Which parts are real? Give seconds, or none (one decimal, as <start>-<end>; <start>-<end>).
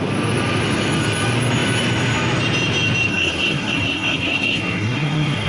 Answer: 0.0-3.1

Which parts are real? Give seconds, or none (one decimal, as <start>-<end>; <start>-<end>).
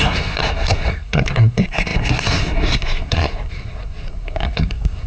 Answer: none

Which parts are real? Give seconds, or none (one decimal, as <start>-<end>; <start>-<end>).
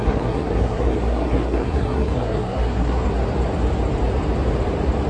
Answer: 3.1-5.1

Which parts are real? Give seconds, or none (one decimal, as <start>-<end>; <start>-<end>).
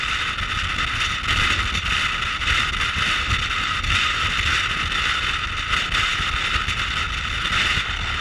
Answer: 0.0-8.2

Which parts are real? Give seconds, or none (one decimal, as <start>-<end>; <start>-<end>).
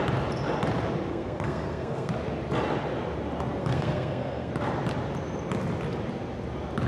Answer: 0.0-1.1; 2.1-3.6; 4.5-6.9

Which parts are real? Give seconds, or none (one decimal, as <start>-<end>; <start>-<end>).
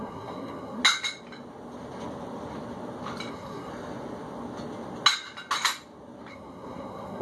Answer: 0.8-3.3; 3.7-6.3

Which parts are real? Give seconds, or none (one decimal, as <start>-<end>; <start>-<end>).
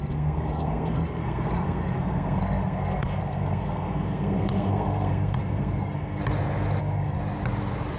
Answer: 6.2-6.8; 7.2-8.0